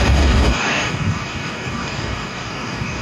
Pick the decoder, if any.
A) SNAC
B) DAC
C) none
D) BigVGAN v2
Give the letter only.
B